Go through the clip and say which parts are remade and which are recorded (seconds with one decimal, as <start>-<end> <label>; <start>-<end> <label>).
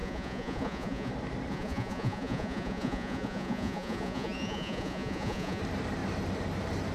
0.0-1.1 remade; 1.1-1.5 recorded; 1.5-5.6 remade; 5.6-6.9 recorded